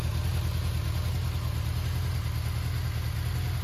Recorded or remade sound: recorded